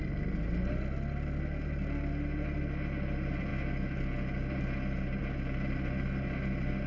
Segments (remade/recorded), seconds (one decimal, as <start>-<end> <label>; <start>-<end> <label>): 0.0-6.9 recorded